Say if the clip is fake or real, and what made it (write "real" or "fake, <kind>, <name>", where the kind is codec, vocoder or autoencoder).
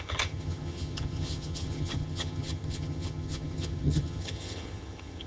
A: fake, vocoder, HiFi-GAN